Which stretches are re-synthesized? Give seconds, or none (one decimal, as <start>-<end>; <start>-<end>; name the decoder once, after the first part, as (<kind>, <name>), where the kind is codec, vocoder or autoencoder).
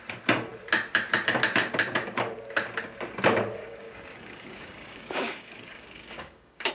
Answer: 3.6-6.7 (codec, DAC)